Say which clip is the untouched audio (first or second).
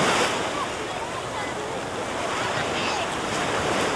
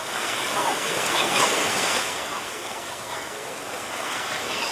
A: first